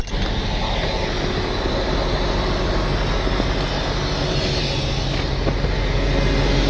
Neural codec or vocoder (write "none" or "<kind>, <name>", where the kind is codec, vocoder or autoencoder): none